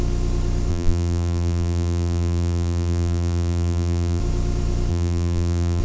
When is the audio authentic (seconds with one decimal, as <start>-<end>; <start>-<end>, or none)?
0.0-0.7; 4.2-4.9